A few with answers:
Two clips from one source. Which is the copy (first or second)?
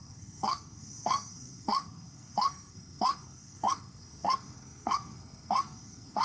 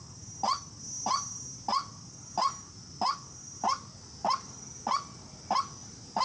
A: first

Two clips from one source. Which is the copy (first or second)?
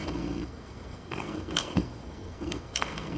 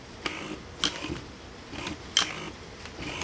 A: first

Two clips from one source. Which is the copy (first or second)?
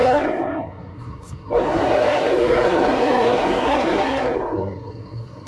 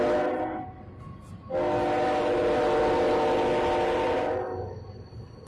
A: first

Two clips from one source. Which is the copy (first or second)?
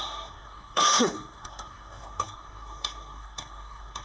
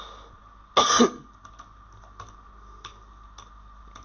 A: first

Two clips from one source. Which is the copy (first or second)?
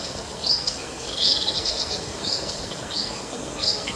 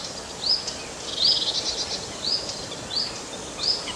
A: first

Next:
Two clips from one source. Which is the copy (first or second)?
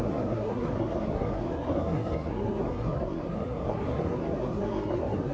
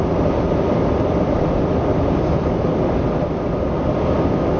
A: first